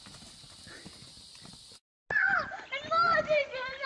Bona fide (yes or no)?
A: yes